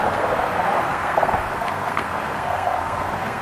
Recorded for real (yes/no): no